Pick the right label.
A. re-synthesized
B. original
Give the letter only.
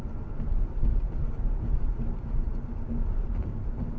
A